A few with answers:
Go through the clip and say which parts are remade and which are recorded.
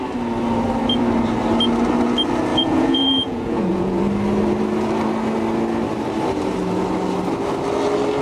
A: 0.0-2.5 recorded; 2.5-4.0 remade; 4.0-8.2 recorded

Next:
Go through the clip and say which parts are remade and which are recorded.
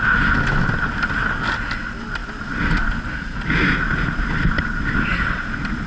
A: 0.0-5.9 recorded